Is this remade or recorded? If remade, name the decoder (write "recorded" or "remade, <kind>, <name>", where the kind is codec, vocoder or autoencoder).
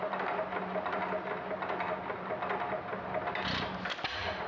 recorded